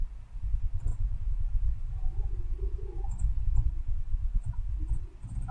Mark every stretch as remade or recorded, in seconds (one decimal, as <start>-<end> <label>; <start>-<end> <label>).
0.0-0.9 recorded; 0.9-2.3 remade; 2.3-3.7 recorded; 3.7-4.7 remade; 4.7-5.5 recorded